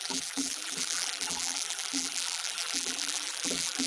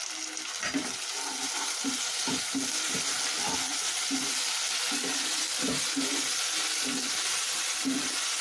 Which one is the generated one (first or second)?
first